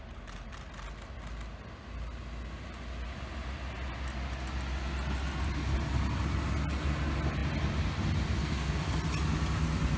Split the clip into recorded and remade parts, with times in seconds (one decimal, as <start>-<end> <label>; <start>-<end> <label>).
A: 0.0-8.4 recorded; 8.4-8.9 remade; 8.9-10.0 recorded